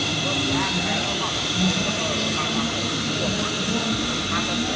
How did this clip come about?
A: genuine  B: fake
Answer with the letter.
A